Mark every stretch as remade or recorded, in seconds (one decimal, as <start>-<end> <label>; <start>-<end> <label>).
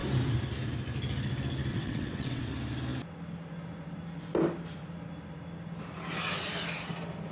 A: 0.0-1.7 recorded; 1.7-2.5 remade; 2.5-7.3 recorded